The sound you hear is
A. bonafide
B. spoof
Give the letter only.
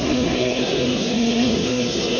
B